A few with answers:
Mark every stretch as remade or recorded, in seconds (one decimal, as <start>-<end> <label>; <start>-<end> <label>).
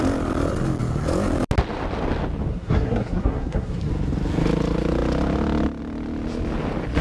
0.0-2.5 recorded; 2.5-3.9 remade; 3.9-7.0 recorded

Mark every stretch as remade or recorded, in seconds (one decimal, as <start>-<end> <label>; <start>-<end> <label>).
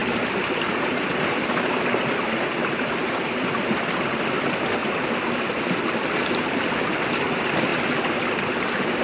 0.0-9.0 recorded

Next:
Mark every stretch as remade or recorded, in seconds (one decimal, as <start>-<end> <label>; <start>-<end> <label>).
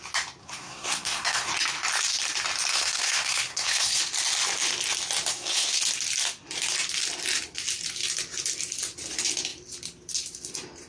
0.0-0.4 recorded; 0.4-1.5 remade; 1.5-2.7 recorded; 2.7-4.0 remade; 4.0-5.3 recorded; 5.3-5.8 remade; 5.8-10.9 recorded